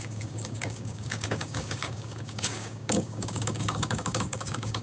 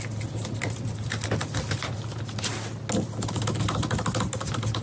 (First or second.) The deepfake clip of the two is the first